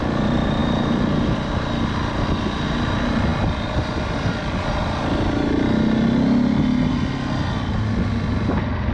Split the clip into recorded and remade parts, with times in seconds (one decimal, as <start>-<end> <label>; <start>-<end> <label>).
0.0-8.9 recorded